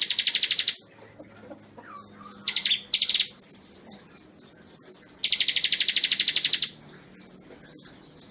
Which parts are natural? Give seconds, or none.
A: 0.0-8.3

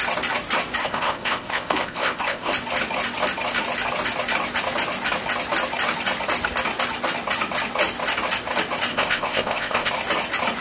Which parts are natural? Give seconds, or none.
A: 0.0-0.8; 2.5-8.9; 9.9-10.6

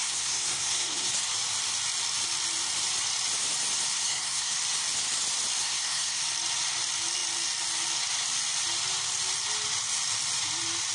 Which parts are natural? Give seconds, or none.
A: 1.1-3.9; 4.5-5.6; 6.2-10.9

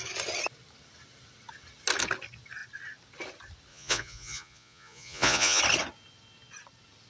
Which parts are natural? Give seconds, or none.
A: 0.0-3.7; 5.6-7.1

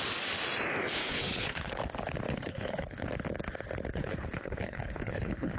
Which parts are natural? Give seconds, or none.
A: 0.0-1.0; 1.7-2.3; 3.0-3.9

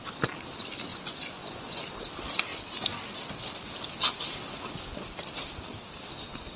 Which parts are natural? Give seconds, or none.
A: 0.0-0.9; 1.8-6.6